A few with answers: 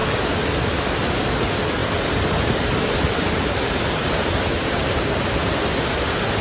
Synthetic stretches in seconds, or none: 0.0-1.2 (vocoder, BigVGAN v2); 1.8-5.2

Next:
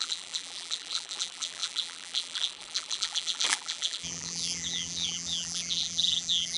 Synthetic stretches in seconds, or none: 0.0-6.6 (vocoder, BigVGAN v2)

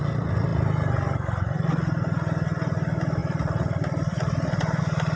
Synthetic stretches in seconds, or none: 3.2-4.8 (vocoder, BigVGAN v2)

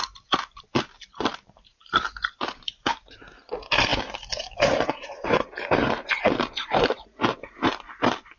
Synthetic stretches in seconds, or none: 0.0-8.4 (vocoder, BigVGAN v2)

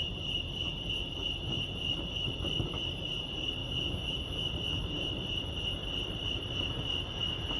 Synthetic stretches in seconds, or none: 0.0-3.6 (vocoder, BigVGAN v2); 4.5-7.6

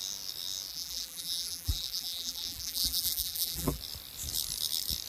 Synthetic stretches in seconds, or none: 0.7-3.8 (vocoder, BigVGAN v2)